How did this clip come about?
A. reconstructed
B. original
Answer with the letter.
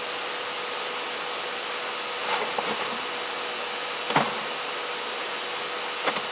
B